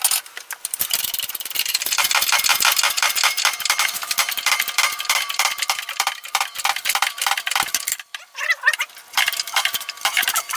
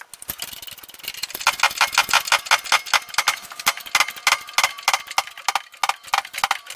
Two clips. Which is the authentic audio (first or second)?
second